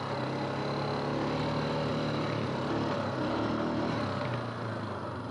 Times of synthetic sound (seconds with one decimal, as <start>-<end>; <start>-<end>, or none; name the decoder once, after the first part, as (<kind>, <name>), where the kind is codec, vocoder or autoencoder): 1.9-3.5 (vocoder, BigVGAN v2)